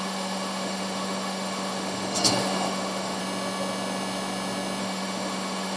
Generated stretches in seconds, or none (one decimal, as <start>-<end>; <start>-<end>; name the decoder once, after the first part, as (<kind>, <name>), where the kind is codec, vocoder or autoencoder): 0.0-3.2 (autoencoder, DAC-VAE); 4.8-5.8